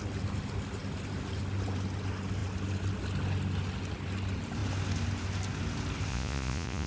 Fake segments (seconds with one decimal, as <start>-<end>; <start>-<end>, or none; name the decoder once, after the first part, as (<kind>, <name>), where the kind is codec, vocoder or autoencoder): 6.1-6.9 (vocoder, Vocos)